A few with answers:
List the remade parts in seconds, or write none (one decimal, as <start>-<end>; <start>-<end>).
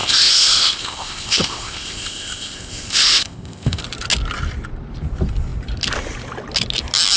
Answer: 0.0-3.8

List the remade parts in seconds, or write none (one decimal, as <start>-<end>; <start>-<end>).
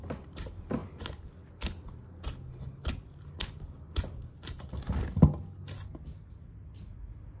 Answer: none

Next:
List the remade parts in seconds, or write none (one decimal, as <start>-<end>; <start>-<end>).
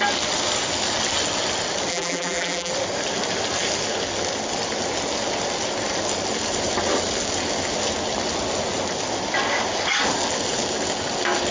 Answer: 1.9-2.7